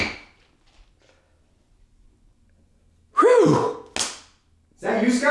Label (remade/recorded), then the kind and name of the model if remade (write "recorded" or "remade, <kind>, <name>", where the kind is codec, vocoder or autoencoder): recorded